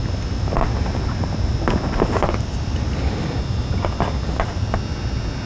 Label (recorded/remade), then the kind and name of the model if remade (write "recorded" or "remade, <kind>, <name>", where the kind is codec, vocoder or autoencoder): recorded